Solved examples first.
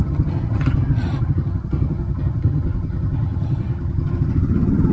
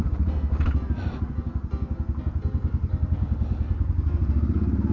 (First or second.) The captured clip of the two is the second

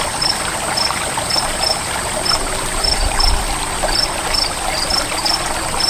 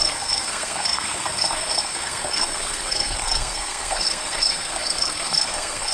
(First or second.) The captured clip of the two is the first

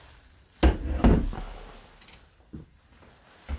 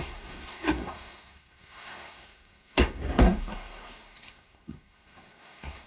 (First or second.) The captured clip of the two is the first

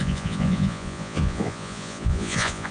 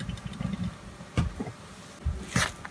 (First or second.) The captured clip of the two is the second